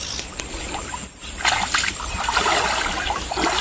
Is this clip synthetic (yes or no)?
no